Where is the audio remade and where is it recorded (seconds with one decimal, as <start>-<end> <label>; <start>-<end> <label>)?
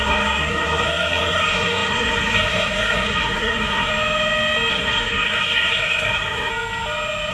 0.0-3.9 remade; 3.9-4.7 recorded; 4.7-6.5 remade; 6.5-7.3 recorded